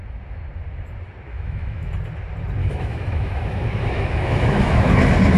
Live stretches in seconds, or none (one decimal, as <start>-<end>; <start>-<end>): 0.0-1.3; 1.9-2.6; 4.9-5.4